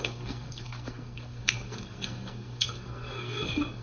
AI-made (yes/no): yes